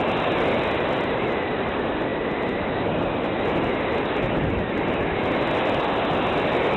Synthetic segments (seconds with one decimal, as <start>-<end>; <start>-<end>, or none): none